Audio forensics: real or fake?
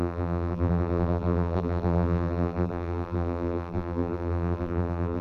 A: fake